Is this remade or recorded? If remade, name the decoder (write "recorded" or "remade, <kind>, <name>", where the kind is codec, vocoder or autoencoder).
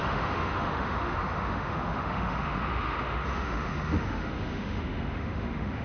remade, autoencoder, DAC-VAE